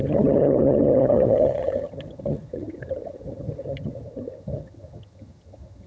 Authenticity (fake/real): fake